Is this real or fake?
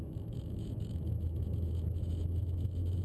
fake